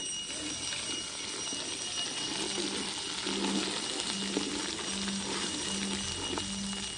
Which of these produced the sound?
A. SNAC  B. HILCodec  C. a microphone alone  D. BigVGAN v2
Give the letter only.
C